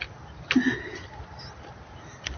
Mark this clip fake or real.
real